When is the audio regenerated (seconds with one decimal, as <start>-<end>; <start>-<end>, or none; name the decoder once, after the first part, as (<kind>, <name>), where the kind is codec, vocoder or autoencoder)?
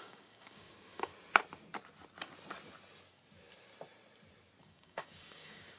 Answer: 0.0-1.1 (codec, DAC); 4.6-5.8